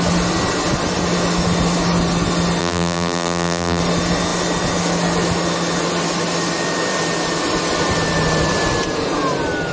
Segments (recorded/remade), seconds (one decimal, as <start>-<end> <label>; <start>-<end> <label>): 0.0-2.6 recorded; 2.6-3.8 remade; 3.8-9.7 recorded